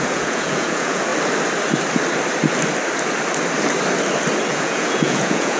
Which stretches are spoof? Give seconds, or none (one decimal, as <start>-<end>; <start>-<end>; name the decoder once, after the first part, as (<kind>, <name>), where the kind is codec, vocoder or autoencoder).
0.0-1.1 (vocoder, Vocos); 4.5-5.6